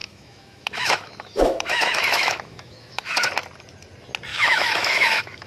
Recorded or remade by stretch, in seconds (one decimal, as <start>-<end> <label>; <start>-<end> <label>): 0.0-3.3 remade; 3.3-4.3 recorded; 4.3-5.5 remade